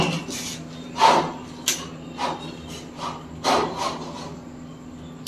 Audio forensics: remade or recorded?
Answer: recorded